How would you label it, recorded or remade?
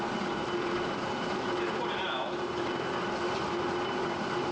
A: recorded